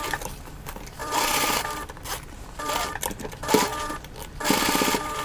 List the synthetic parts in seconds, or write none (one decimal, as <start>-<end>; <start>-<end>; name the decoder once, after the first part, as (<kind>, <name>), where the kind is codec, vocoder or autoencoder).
0.0-3.7 (vocoder, BigVGAN v2); 4.6-5.2